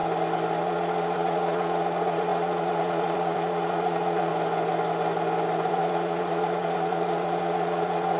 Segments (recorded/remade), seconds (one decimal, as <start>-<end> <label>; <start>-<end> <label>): 0.0-0.6 recorded; 0.6-4.3 remade; 4.3-5.7 recorded; 5.7-8.2 remade